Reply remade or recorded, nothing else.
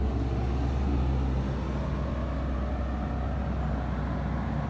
recorded